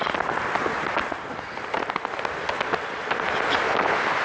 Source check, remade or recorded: recorded